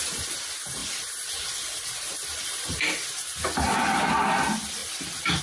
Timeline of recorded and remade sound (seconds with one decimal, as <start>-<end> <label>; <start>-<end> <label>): 0.0-0.8 recorded; 0.8-4.0 remade; 4.0-4.8 recorded; 4.8-5.4 remade